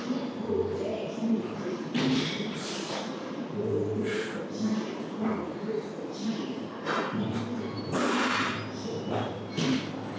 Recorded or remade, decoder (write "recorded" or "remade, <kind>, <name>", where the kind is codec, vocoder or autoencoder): recorded